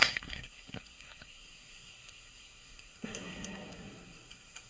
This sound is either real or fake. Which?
fake